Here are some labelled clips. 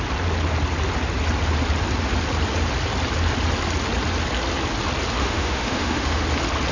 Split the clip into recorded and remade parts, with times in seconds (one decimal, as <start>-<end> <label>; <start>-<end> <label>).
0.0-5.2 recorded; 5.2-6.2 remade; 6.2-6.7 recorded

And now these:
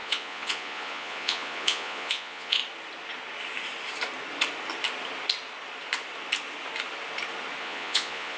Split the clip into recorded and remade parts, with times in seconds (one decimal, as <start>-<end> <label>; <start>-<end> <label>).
0.0-2.6 remade; 2.6-7.6 recorded; 7.6-8.4 remade

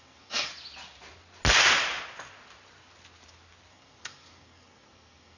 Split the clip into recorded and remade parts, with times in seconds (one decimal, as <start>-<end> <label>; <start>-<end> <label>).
0.0-0.5 remade; 0.5-3.7 recorded; 3.7-5.4 remade

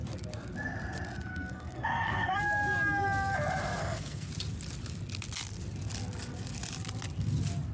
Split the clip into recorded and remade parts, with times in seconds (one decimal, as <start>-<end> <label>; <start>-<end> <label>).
0.0-1.3 recorded; 1.3-2.4 remade; 2.4-3.8 recorded; 3.8-4.3 remade; 4.3-7.7 recorded

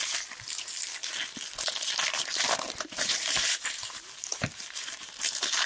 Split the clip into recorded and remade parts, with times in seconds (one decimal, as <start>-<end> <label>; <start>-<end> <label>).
0.0-2.3 recorded; 2.3-5.7 remade

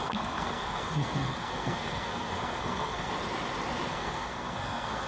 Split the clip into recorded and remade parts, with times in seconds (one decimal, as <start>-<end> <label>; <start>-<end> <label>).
0.0-3.1 remade; 3.1-3.9 recorded; 3.9-5.1 remade

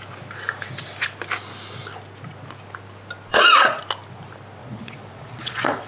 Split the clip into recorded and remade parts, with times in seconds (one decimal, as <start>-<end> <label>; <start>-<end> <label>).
0.0-3.3 recorded; 3.3-3.8 remade; 3.8-4.6 recorded; 4.6-5.9 remade